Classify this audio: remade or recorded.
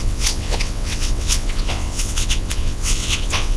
remade